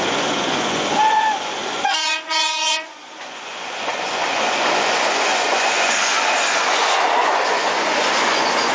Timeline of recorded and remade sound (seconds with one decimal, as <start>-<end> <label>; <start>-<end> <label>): 0.0-8.7 remade